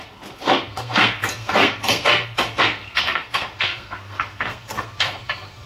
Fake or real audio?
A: fake